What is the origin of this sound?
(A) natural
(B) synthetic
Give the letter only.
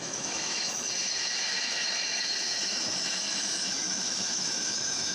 B